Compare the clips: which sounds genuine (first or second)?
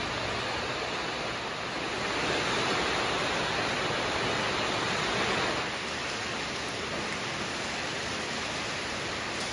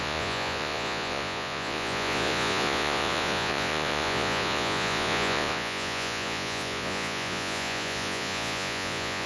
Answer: first